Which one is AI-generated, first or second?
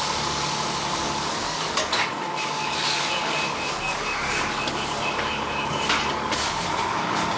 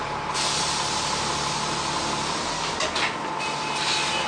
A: first